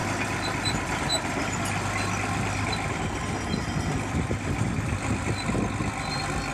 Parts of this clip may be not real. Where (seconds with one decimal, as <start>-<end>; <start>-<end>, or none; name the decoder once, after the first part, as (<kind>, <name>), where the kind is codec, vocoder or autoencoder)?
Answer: none